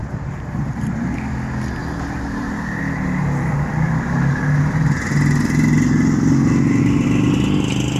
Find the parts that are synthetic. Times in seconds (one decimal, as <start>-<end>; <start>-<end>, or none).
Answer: 0.0-0.9; 1.8-2.8

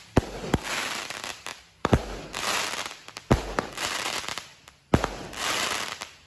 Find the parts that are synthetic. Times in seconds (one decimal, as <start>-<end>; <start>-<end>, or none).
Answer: none

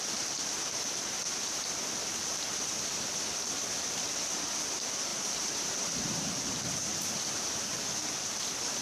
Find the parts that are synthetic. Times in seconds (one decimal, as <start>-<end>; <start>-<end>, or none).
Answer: 5.1-6.5